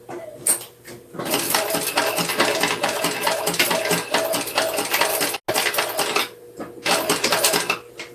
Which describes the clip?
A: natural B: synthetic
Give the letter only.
A